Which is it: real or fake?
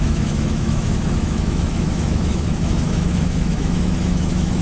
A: fake